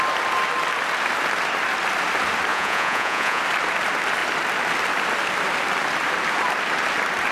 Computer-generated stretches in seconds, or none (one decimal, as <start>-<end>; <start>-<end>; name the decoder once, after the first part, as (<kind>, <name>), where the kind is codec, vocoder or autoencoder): 2.5-3.4 (vocoder, Vocos)